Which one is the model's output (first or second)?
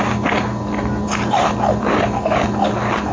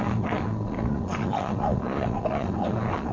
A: second